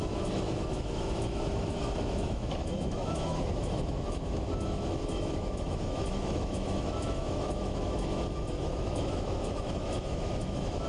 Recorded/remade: remade